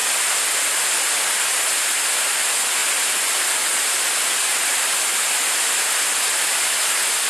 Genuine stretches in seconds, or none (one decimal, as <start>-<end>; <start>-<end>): 0.0-7.3